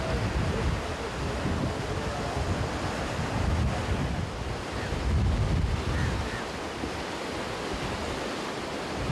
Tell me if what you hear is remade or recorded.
recorded